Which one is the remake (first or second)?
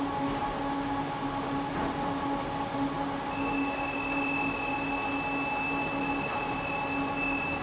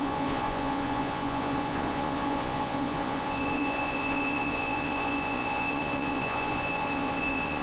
second